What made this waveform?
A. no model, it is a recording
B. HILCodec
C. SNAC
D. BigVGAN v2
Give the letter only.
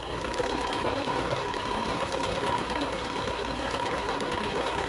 C